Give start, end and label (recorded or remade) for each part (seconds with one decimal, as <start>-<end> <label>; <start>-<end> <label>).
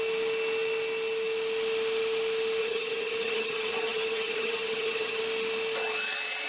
0.0-2.6 recorded; 2.6-5.2 remade; 5.2-6.5 recorded